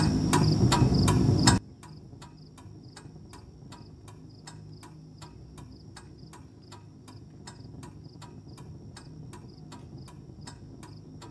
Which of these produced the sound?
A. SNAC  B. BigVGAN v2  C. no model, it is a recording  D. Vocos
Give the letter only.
C